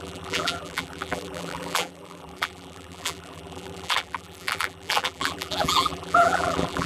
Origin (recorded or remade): remade